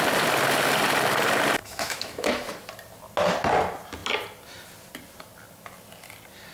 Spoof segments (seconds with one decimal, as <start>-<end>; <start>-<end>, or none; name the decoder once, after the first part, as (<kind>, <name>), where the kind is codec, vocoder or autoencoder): 1.6-2.3 (autoencoder, DAC-VAE)